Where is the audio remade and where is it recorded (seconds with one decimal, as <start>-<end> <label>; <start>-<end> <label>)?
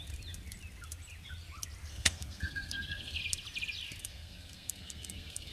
0.0-1.9 recorded; 1.9-3.2 remade; 3.2-4.0 recorded; 4.0-5.5 remade